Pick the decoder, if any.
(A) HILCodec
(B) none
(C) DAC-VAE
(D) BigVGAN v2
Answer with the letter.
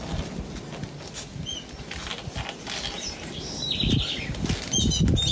B